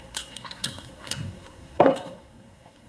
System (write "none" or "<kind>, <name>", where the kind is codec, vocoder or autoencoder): codec, SNAC